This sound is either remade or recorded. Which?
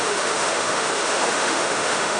remade